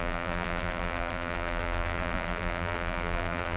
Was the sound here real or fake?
fake